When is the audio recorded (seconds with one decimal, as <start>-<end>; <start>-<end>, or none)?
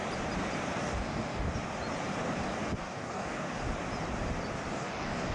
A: 0.0-0.8; 1.5-2.8; 3.6-4.7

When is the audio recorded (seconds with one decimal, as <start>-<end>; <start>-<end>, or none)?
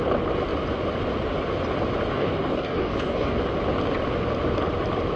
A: 0.0-2.1; 3.4-5.2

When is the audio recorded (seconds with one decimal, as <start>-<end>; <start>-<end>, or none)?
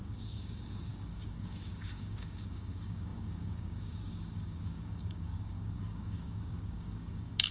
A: none